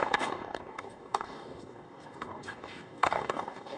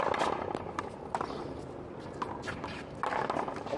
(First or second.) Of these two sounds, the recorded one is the second